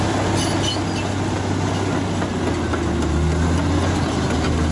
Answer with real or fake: real